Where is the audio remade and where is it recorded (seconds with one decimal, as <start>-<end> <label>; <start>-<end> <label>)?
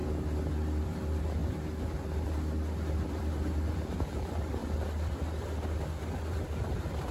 0.0-0.5 recorded; 0.5-1.4 remade; 1.4-3.1 recorded; 3.1-7.1 remade